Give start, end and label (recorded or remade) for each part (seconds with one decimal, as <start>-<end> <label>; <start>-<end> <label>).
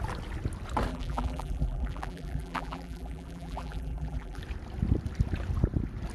0.0-0.9 recorded; 0.9-4.4 remade; 4.4-6.1 recorded